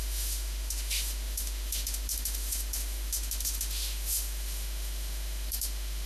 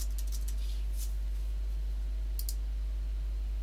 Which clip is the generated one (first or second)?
first